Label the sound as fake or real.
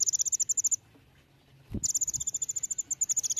real